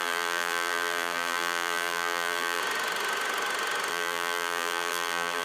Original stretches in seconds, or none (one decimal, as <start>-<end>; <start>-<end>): 2.6-3.9